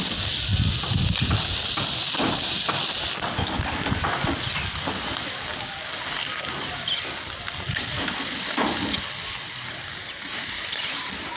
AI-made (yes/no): no